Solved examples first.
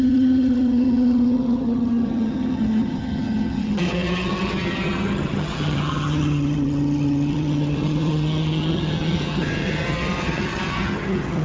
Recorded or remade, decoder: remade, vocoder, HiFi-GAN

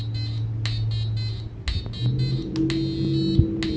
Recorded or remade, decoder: recorded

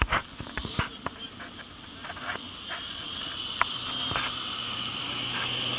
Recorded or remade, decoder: recorded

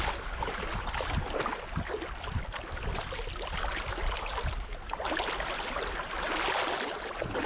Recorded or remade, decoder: recorded